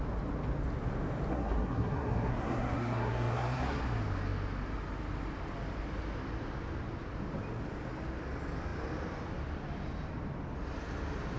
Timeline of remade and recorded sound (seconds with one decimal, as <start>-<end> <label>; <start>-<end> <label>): 0.0-1.3 recorded; 1.3-3.8 remade; 3.8-11.4 recorded